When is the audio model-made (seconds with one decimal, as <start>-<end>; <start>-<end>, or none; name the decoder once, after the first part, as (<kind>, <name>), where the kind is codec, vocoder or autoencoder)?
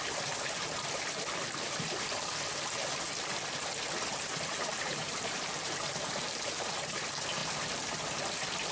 4.1-6.6 (vocoder, BigVGAN v2)